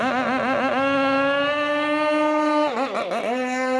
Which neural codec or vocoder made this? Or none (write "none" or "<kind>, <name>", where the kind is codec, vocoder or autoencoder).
none